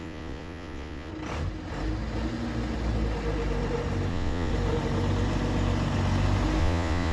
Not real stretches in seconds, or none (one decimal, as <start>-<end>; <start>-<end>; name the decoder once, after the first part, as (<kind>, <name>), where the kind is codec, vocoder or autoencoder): 0.0-1.1 (vocoder, Vocos); 4.1-4.5; 6.6-7.1